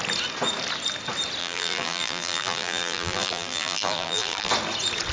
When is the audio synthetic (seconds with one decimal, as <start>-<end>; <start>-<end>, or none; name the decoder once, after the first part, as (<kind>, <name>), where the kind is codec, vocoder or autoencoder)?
1.4-4.5 (vocoder, BigVGAN v2)